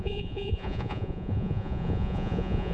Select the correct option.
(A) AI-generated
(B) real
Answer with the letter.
A